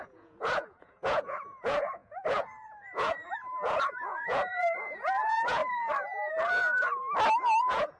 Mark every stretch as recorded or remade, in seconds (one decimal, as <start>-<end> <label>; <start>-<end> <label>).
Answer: 0.0-5.6 remade; 5.6-6.3 recorded; 6.3-6.9 remade; 6.9-7.6 recorded; 7.6-8.0 remade